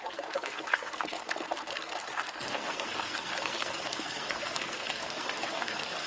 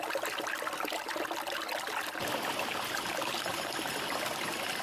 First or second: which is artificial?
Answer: first